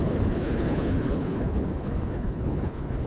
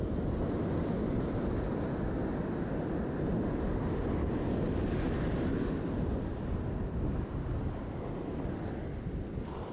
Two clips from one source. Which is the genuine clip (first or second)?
second